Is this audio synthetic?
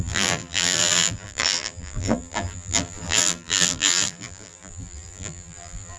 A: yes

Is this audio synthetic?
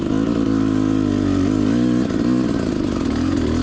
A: no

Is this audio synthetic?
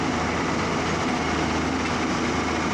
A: no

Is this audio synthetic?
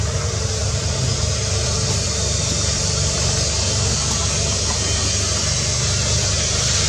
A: no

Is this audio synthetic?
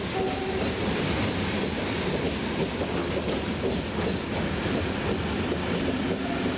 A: no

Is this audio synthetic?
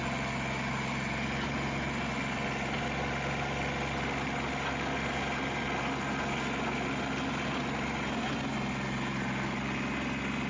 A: no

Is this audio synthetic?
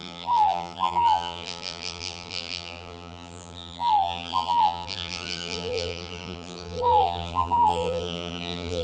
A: yes